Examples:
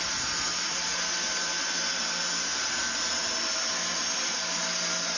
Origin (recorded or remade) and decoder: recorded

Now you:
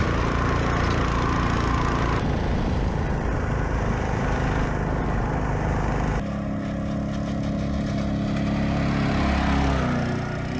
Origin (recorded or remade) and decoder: recorded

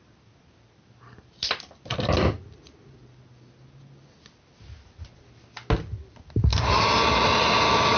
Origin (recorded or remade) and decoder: recorded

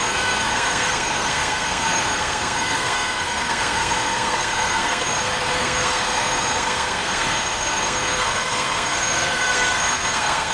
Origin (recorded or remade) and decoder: remade, codec, SNAC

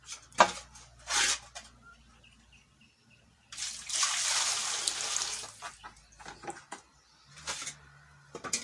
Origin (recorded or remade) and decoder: recorded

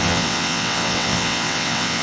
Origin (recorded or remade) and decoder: remade, vocoder, WaveNeXt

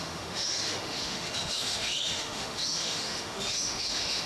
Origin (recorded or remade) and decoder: remade, autoencoder, DAC-VAE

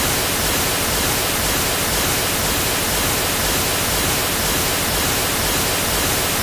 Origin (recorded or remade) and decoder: recorded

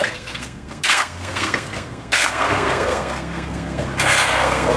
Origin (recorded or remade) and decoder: remade, codec, SNAC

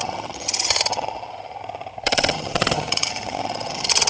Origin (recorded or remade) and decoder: remade, vocoder, HiFi-GAN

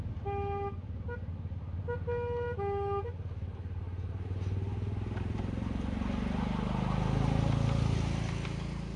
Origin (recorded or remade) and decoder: recorded